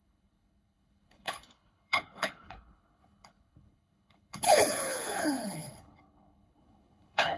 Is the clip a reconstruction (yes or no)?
yes